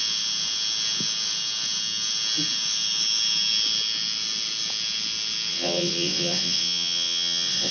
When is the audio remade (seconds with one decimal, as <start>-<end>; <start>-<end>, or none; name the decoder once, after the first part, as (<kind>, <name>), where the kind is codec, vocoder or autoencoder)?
5.5-7.7 (vocoder, WaveNeXt)